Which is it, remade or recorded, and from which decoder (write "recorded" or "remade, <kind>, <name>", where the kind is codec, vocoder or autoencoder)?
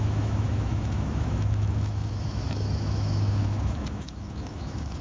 remade, autoencoder, DAC-VAE